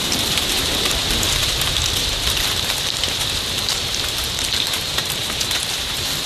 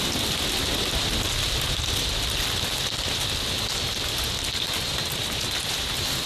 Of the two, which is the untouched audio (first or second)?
second